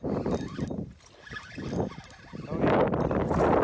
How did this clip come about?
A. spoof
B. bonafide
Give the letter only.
B